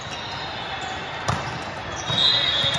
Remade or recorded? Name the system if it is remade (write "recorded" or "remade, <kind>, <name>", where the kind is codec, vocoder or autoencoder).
recorded